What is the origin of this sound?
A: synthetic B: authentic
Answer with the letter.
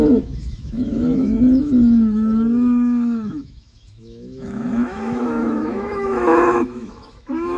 A